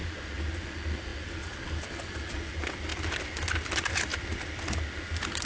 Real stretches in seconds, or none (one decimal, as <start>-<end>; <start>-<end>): 0.6-1.1; 1.9-4.1; 4.7-5.5